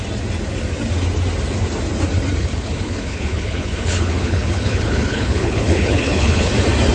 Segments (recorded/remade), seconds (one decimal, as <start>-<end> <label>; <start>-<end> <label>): 0.0-2.4 recorded; 2.4-6.5 remade; 6.5-6.9 recorded